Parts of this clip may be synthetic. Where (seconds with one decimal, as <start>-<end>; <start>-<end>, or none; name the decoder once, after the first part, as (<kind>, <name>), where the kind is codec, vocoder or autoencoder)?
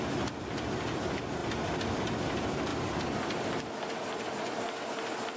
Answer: none